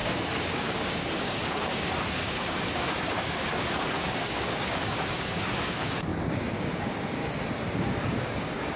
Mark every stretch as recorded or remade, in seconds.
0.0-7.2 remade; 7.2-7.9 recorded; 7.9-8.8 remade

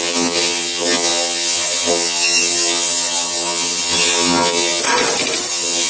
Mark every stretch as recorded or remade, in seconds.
0.0-4.8 remade; 4.8-5.5 recorded; 5.5-5.9 remade

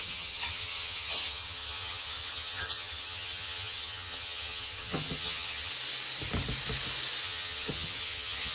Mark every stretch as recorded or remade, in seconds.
0.0-5.7 remade; 5.7-7.2 recorded; 7.2-8.5 remade

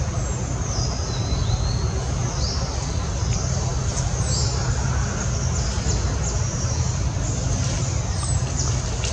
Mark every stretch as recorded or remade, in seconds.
0.0-9.1 recorded

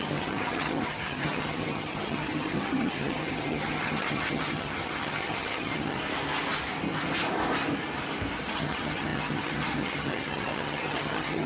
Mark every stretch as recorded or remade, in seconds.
0.0-6.0 remade; 6.0-8.4 recorded; 8.4-11.5 remade

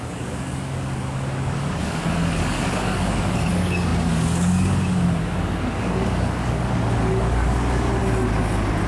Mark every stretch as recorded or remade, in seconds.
0.0-8.0 remade; 8.0-8.9 recorded